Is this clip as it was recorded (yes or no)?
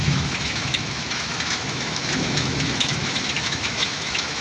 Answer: no